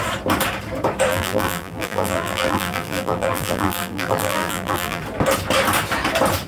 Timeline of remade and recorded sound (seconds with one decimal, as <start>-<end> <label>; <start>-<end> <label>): 0.0-1.1 recorded; 1.1-5.0 remade; 5.0-6.5 recorded